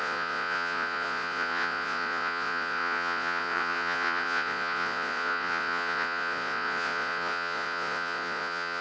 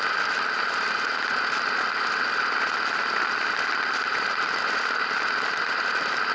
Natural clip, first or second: second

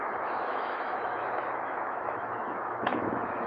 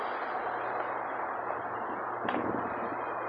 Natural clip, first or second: second